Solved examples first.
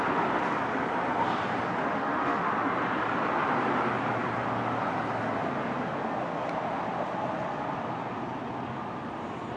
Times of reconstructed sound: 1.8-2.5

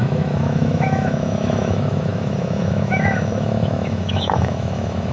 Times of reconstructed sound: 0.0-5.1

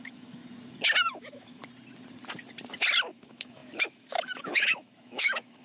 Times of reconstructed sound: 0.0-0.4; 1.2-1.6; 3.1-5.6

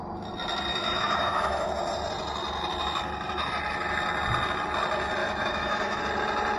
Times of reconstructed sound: 0.7-1.7; 5.2-6.0

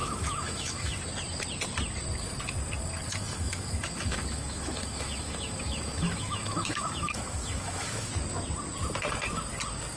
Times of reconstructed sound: 0.0-1.0; 3.1-8.1

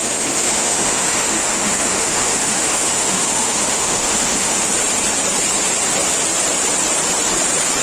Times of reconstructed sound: 0.0-4.7

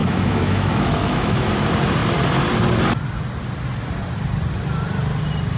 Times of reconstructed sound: 0.0-1.5